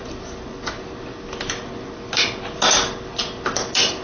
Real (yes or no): yes